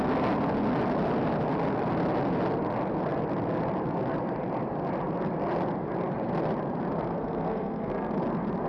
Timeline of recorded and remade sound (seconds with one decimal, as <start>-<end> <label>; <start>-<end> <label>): 0.0-6.9 recorded; 6.9-8.2 remade; 8.2-8.7 recorded